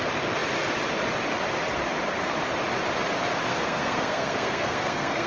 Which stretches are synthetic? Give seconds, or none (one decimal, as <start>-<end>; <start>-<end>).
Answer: 3.5-5.3